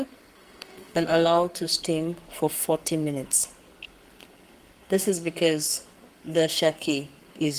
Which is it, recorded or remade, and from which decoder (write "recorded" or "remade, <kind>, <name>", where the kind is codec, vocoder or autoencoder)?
remade, codec, SNAC